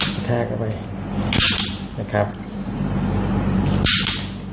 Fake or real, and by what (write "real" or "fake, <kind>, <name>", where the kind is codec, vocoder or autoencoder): real